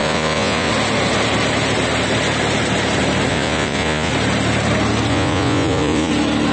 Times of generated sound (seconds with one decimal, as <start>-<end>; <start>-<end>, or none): 0.0-0.7; 3.3-4.1; 5.1-6.1